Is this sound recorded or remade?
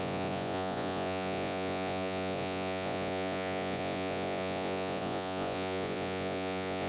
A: remade